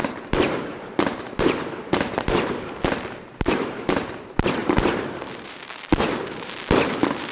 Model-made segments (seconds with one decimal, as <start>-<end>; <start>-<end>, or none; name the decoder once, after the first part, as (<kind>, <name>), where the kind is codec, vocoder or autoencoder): 0.0-4.1 (vocoder, BigVGAN v2); 4.6-6.5